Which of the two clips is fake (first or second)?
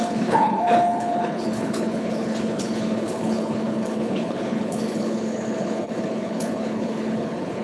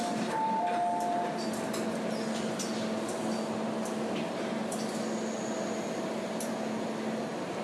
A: first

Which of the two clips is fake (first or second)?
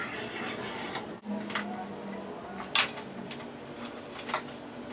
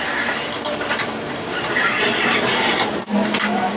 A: second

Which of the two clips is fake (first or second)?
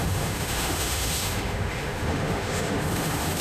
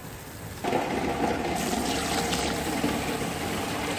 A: first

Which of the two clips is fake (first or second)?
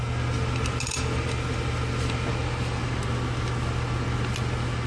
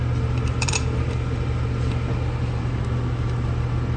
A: second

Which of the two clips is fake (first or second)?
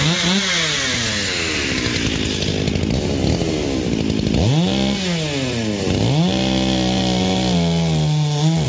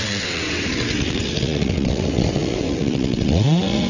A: second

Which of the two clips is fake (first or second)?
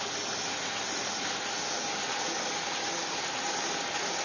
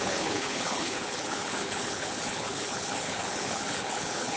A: second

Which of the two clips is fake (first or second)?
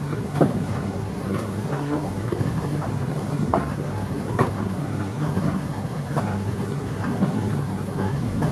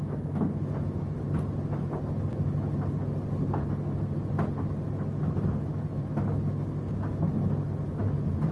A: first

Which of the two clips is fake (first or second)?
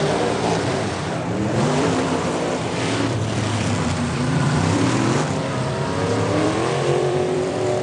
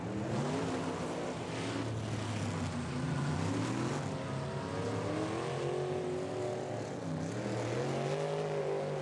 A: first